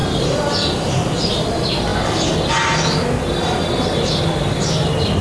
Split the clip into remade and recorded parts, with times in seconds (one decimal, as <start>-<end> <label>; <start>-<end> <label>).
0.0-5.2 recorded